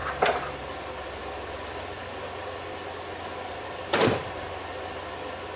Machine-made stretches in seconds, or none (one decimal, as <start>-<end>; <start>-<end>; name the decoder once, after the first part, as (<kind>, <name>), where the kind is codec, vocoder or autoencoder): none